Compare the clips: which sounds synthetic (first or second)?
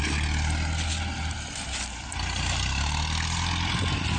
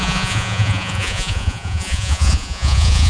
second